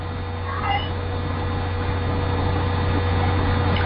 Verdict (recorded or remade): recorded